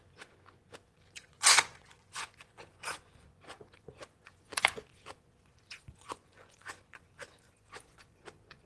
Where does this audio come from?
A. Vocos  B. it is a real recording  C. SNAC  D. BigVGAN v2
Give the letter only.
A